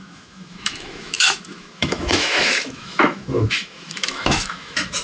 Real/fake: fake